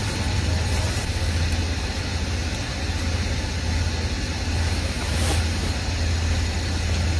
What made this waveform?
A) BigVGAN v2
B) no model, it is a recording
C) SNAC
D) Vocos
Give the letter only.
B